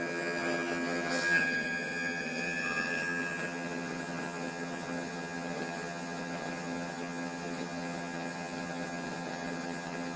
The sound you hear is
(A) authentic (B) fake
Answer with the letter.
B